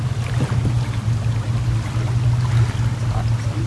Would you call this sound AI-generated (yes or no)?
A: no